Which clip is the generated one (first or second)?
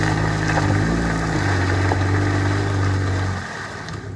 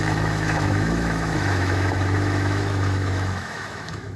second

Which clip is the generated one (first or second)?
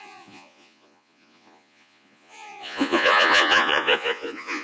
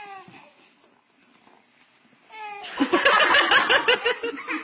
first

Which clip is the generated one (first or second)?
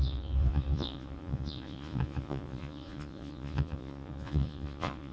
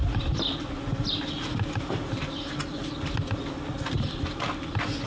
first